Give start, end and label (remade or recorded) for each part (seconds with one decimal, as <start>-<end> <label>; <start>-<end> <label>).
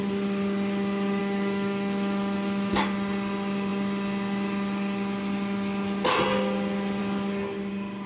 0.0-1.2 recorded; 1.2-2.7 remade; 2.7-8.1 recorded